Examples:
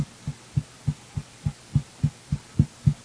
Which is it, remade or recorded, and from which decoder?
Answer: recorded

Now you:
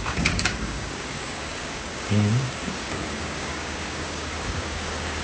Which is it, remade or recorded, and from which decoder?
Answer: remade, codec, DAC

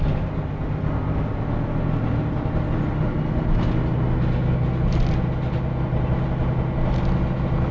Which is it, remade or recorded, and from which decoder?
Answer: recorded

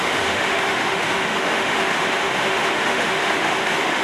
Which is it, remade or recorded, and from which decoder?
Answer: remade, autoencoder, DAC-VAE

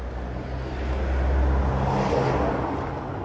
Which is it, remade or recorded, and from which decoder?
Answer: recorded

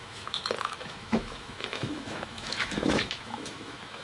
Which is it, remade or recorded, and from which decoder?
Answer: remade, autoencoder, DAC-VAE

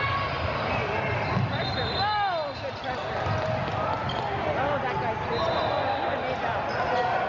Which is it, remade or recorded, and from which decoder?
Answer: recorded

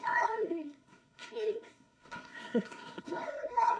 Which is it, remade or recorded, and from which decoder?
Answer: remade, codec, SNAC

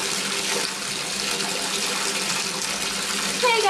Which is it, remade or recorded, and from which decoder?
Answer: recorded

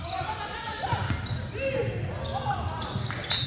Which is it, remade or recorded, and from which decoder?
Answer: recorded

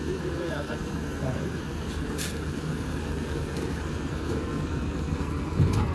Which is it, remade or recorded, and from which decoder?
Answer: remade, codec, SNAC